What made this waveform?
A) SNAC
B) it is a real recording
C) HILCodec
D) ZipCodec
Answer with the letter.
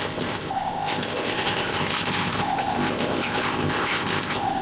D